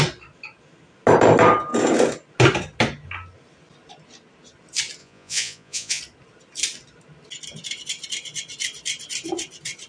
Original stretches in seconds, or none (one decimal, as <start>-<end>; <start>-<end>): 0.0-5.0; 6.0-9.9